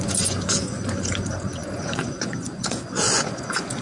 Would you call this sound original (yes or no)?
no